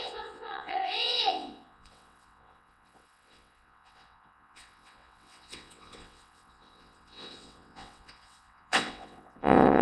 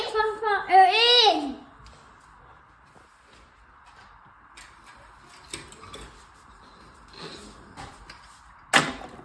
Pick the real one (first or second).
second